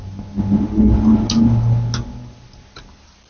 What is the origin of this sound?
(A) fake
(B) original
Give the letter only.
B